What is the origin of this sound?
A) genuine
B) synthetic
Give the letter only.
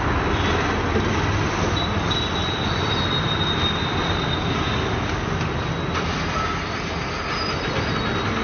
A